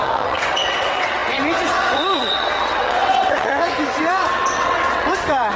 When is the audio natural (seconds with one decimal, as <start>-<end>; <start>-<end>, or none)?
none